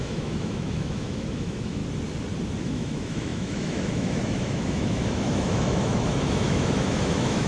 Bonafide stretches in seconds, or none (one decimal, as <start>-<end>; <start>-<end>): 1.8-2.6